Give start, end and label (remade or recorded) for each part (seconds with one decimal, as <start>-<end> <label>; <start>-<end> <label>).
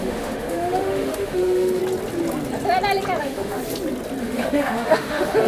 0.0-1.8 remade; 1.8-3.2 recorded; 3.2-3.6 remade; 3.6-4.2 recorded; 4.2-5.5 remade